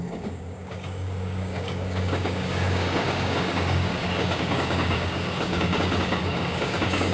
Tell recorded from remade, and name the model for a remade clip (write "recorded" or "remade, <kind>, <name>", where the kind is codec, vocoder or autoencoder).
remade, codec, DAC